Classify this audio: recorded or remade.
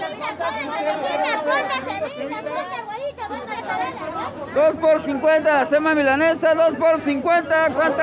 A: recorded